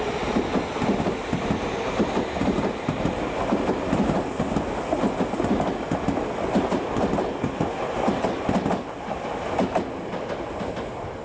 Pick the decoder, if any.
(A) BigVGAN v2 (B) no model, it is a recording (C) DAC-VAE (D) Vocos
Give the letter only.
B